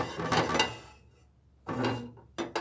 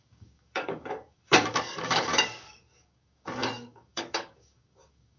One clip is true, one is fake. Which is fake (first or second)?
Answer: second